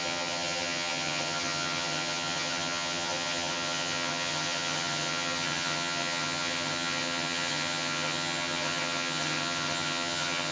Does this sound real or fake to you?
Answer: fake